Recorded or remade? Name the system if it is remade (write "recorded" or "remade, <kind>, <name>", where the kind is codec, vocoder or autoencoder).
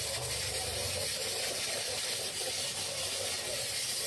recorded